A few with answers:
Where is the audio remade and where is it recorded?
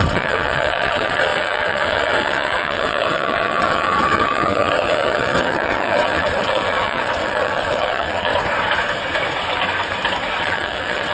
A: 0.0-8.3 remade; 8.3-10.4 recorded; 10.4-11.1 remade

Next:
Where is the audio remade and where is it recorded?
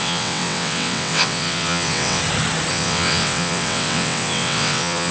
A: 0.0-2.2 remade; 2.2-2.7 recorded; 2.7-5.1 remade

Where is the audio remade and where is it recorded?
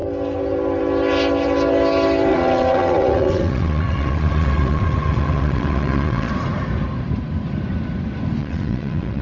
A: 0.0-2.3 recorded; 2.3-6.3 remade; 6.3-8.4 recorded; 8.4-9.2 remade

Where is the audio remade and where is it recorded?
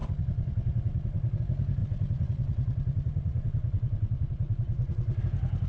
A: 0.0-1.4 remade; 1.4-1.8 recorded; 1.8-5.2 remade; 5.2-5.7 recorded